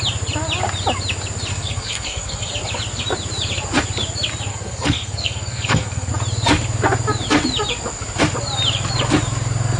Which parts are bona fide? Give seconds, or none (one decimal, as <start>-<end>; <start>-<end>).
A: 0.0-1.5; 2.5-4.5; 6.1-9.8